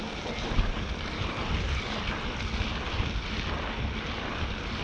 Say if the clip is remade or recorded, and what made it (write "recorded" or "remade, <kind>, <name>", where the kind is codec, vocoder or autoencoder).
recorded